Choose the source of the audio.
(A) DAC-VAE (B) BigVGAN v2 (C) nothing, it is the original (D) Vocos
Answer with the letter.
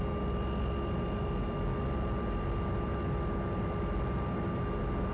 C